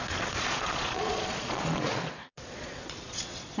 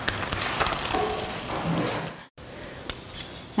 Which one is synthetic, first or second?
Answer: first